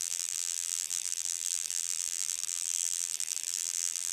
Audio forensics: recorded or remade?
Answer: remade